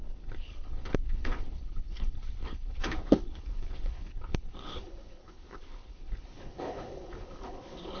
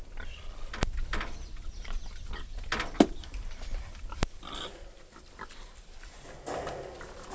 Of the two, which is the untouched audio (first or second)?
second